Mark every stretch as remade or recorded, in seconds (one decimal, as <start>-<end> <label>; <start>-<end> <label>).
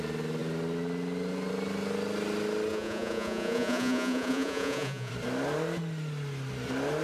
0.0-2.7 recorded; 2.7-5.1 remade; 5.1-7.0 recorded